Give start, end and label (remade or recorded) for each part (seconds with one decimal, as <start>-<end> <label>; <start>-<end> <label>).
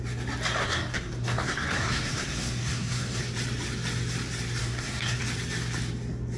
0.0-0.6 recorded; 0.6-3.2 remade; 3.2-4.6 recorded; 4.6-5.2 remade; 5.2-6.4 recorded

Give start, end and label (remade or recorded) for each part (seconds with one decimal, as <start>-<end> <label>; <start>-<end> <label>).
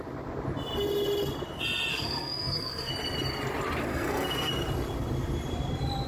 0.0-1.9 recorded; 1.9-2.9 remade; 2.9-3.9 recorded; 3.9-4.5 remade; 4.5-6.1 recorded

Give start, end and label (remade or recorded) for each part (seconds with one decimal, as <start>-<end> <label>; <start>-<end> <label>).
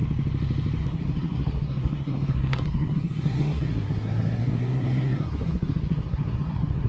0.0-0.8 recorded; 0.8-6.9 remade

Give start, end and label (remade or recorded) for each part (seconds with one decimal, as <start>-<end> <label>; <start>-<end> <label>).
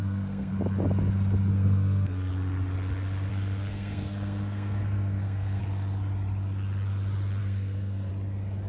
0.0-0.5 remade; 0.5-1.5 recorded; 1.5-2.3 remade; 2.3-3.3 recorded; 3.3-5.6 remade; 5.6-7.4 recorded; 7.4-8.1 remade; 8.1-8.7 recorded